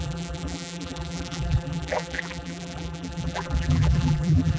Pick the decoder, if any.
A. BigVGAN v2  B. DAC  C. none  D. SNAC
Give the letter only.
A